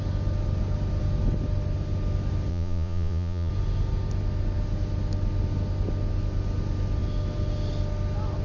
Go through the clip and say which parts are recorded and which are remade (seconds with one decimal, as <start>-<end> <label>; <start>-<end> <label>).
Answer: 0.0-2.5 recorded; 2.5-3.5 remade; 3.5-8.4 recorded